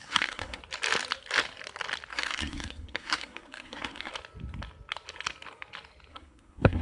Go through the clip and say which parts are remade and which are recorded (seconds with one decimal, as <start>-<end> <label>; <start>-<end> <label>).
0.0-0.6 remade; 0.6-2.1 recorded; 2.1-4.1 remade; 4.1-6.1 recorded; 6.1-6.8 remade